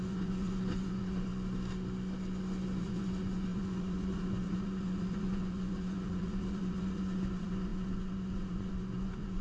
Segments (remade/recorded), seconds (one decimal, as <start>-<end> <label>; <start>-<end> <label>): 0.0-1.3 remade; 1.3-2.8 recorded; 2.8-9.4 remade